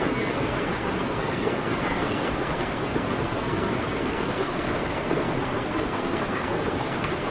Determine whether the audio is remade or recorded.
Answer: remade